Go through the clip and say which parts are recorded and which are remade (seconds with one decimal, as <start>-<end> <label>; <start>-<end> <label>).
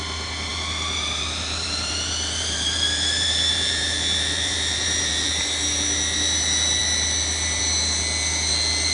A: 0.0-0.5 recorded; 0.5-5.3 remade; 5.3-8.9 recorded